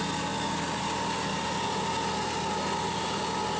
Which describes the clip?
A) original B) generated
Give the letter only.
A